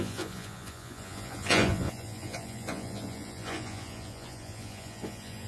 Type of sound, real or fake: fake